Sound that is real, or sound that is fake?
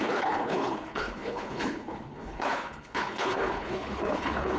fake